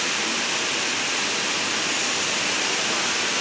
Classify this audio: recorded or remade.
recorded